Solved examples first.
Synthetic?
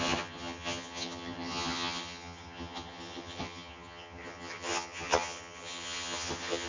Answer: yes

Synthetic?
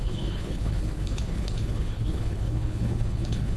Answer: yes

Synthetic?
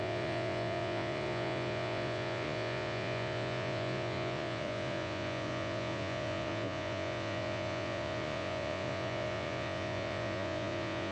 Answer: yes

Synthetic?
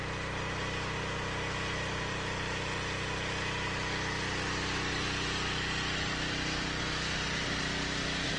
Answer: no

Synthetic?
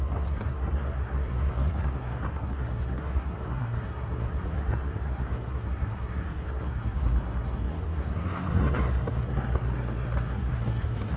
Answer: yes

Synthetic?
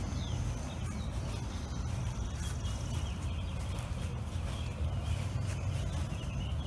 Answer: no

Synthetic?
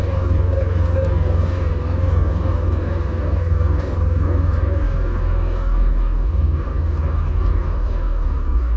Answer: yes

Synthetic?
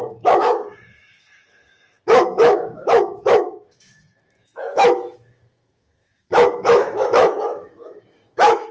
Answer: yes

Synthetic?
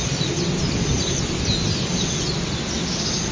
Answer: no